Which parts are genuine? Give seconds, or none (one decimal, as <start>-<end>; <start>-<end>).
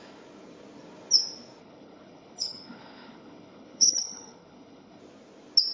0.0-1.6; 5.0-5.7